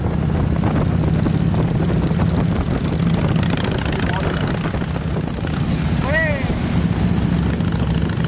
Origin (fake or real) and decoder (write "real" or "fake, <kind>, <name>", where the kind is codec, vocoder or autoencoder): real